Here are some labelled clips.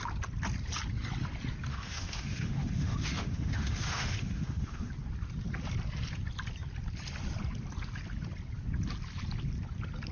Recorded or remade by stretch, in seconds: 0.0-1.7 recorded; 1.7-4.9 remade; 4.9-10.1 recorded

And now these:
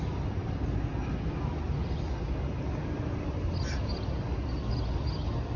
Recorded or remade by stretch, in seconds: 0.0-5.6 recorded

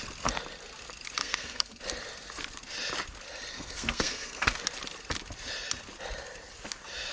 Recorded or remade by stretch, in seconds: 0.0-1.2 recorded; 1.2-1.8 remade; 1.8-3.5 recorded; 3.5-4.6 remade; 4.6-7.1 recorded